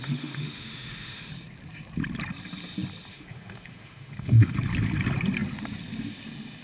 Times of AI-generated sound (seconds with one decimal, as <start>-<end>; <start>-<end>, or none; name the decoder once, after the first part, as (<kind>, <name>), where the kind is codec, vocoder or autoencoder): 0.0-1.3 (autoencoder, DAC-VAE); 3.1-4.6